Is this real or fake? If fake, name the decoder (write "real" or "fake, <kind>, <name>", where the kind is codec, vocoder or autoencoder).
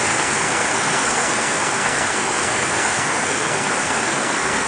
fake, codec, SNAC